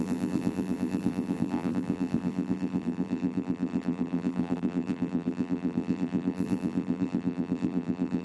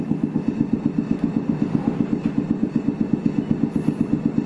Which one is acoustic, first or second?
second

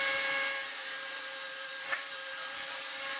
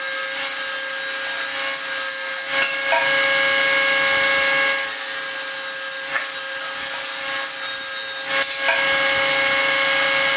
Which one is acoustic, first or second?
second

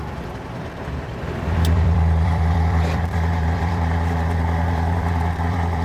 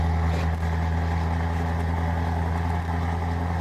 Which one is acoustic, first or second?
second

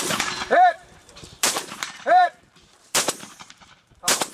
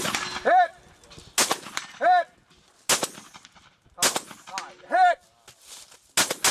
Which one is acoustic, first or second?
second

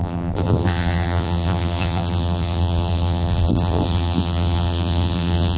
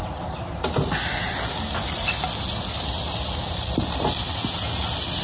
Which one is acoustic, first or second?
second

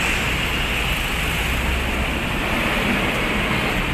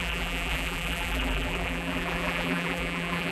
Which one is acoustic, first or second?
first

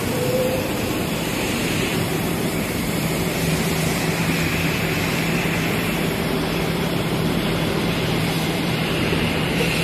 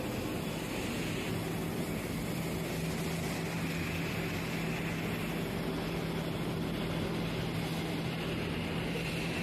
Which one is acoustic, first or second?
second